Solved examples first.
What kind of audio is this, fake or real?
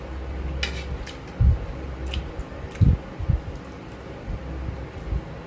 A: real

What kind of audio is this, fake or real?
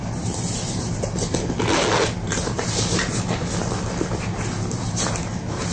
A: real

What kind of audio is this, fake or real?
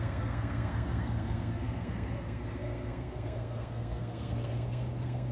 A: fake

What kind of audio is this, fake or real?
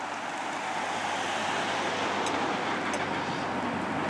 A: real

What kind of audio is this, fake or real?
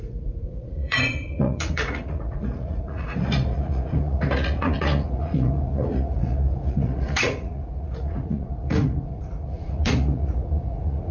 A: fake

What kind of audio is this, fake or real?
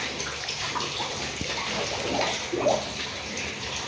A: real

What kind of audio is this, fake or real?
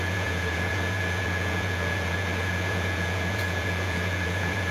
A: fake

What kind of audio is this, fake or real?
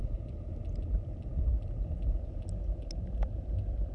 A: real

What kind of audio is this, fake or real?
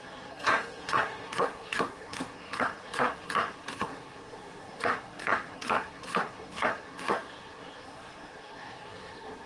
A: fake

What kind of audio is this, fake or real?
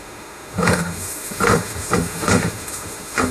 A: fake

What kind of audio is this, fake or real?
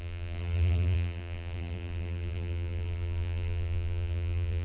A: fake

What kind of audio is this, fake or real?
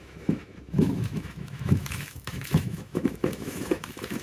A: fake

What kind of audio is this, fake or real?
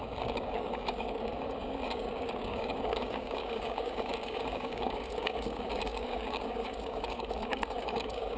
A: fake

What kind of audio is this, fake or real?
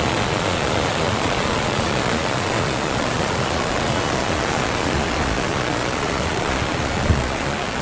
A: fake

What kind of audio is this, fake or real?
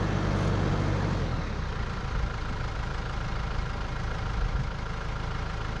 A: real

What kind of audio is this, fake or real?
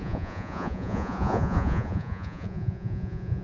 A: fake